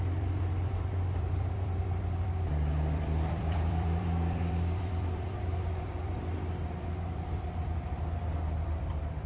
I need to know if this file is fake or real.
fake